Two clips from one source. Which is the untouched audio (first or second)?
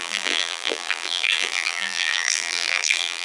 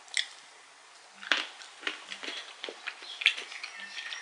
second